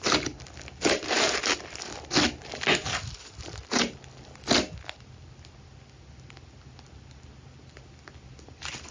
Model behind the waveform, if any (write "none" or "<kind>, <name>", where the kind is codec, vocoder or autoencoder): none